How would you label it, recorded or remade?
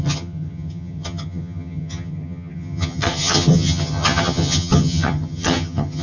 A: remade